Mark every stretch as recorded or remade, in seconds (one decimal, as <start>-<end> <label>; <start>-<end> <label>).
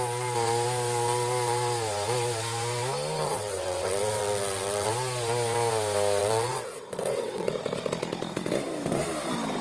0.0-3.3 recorded; 3.3-4.9 remade; 4.9-6.2 recorded; 6.2-7.5 remade; 7.5-9.6 recorded